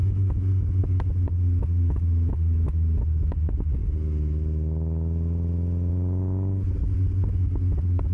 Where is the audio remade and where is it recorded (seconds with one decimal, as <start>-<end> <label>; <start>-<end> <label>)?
0.0-8.1 recorded